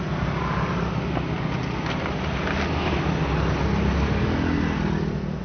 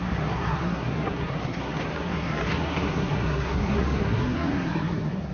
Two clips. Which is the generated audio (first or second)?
second